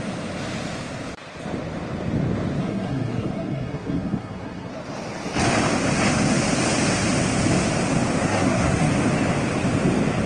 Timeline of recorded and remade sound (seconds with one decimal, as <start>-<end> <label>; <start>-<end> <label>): 0.0-2.6 recorded; 2.6-4.7 remade; 4.7-8.2 recorded; 8.2-8.9 remade; 8.9-10.3 recorded